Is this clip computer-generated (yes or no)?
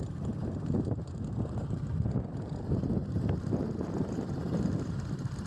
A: yes